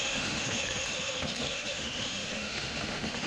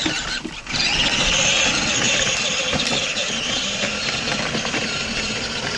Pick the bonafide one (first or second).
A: second